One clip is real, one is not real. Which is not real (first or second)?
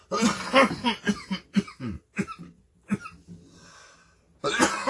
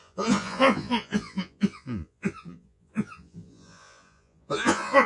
second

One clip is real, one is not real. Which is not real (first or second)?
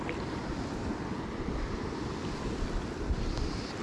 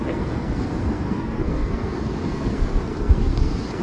second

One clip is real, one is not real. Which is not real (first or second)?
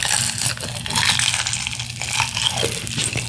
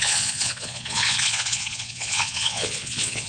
second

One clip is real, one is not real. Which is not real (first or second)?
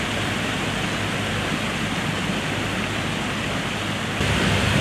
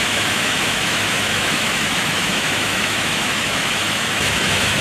second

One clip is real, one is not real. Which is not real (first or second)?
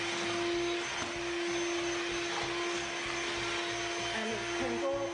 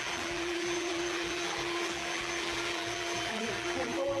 second